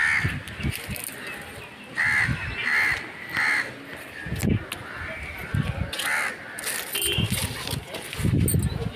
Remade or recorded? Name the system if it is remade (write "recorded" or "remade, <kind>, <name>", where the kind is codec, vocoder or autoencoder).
recorded